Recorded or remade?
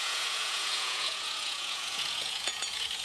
remade